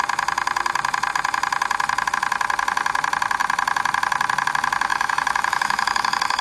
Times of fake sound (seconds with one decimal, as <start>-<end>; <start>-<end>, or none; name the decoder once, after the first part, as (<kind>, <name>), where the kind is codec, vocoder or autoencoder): 4.9-6.4 (autoencoder, DAC-VAE)